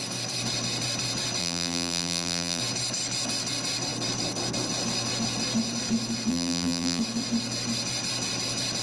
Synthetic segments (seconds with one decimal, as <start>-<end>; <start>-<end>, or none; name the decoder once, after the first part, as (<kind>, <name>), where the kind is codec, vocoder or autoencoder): 1.4-2.6 (vocoder, BigVGAN v2); 6.3-7.0